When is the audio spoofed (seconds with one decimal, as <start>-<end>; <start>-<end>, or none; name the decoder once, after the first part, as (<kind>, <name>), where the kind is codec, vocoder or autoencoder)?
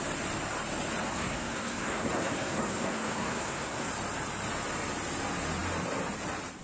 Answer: 1.0-3.9 (codec, SNAC)